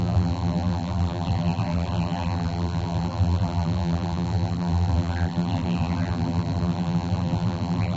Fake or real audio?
fake